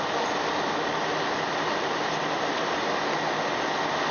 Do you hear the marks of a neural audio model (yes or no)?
no